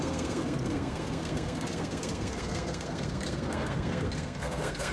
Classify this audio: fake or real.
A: fake